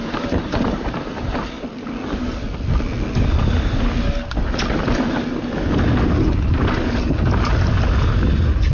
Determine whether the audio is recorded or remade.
recorded